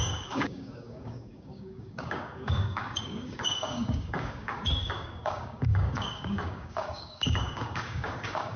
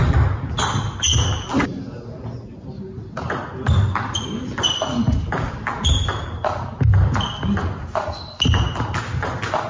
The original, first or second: second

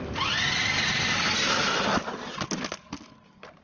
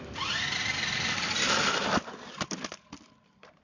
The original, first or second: first